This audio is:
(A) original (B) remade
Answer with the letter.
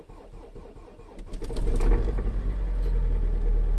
A